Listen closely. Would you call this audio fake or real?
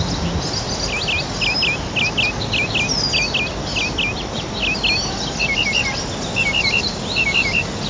real